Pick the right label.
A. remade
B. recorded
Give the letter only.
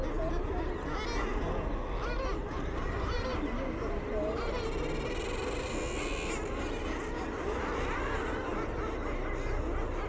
B